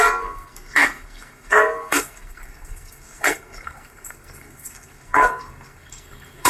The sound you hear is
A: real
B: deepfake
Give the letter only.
B